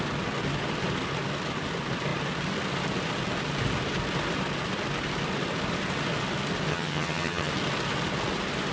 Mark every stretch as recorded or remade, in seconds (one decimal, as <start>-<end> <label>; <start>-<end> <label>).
0.0-6.7 recorded; 6.7-7.5 remade; 7.5-8.7 recorded